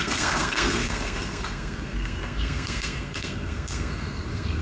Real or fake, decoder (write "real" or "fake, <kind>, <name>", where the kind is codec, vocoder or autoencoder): fake, codec, SNAC